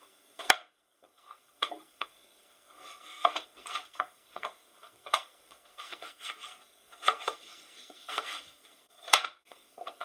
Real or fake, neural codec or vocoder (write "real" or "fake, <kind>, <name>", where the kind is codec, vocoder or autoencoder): fake, codec, SNAC